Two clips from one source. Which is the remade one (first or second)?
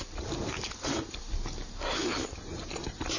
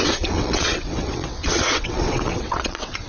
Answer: second